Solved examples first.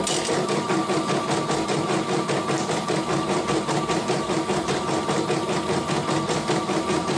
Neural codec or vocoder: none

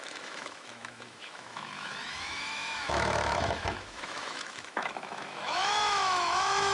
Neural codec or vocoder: autoencoder, DAC-VAE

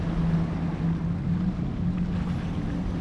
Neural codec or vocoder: none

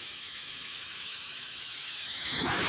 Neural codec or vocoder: autoencoder, DAC-VAE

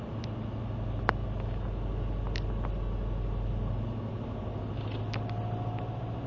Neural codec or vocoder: none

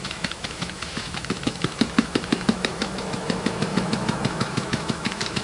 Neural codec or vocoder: autoencoder, DAC-VAE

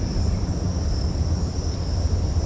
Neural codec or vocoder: none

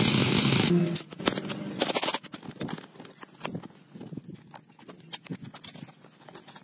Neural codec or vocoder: none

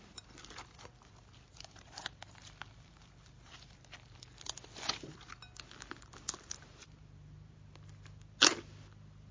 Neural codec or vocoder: none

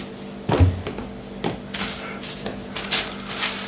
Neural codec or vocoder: none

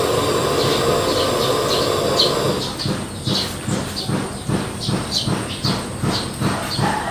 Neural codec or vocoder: none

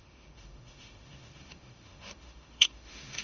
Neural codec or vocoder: autoencoder, DAC-VAE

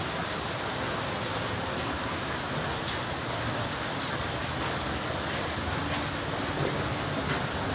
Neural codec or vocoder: none